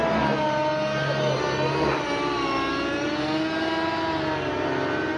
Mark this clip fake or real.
real